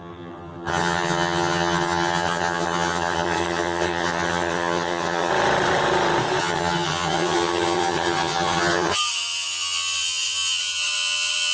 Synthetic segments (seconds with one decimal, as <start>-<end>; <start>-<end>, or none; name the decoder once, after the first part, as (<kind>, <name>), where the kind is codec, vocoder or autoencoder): 0.0-5.3 (vocoder, HiFi-GAN); 6.4-11.5